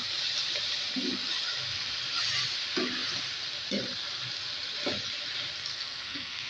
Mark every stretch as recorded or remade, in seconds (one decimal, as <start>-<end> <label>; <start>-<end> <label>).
0.0-5.7 recorded; 5.7-6.5 remade